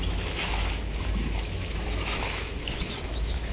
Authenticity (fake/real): fake